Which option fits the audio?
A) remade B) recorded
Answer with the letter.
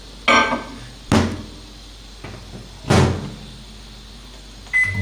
B